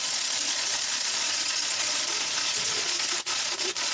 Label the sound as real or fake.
fake